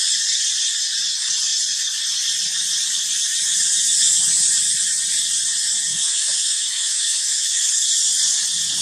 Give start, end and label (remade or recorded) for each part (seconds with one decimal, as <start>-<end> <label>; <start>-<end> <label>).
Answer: 0.0-5.9 recorded; 5.9-7.7 remade; 7.7-8.8 recorded